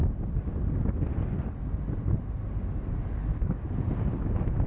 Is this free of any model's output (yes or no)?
yes